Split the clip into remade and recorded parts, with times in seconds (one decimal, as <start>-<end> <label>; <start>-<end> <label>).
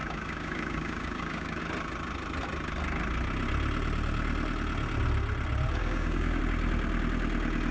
0.0-1.6 remade; 1.6-5.8 recorded; 5.8-6.4 remade; 6.4-7.7 recorded